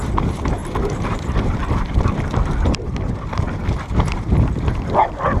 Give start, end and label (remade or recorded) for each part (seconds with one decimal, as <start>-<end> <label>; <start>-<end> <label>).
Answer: 0.0-0.6 recorded; 0.6-2.0 remade; 2.0-5.4 recorded